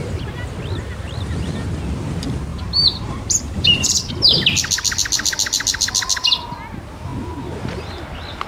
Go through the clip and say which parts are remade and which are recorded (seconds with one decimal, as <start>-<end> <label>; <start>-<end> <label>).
0.0-2.5 recorded; 2.5-4.1 remade; 4.1-8.5 recorded